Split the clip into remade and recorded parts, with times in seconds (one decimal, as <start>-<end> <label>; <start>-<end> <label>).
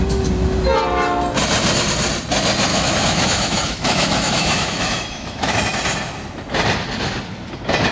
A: 0.0-2.7 recorded; 2.7-5.6 remade; 5.6-7.9 recorded